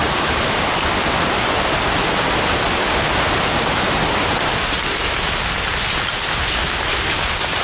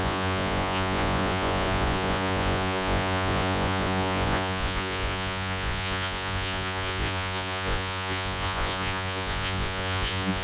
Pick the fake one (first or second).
second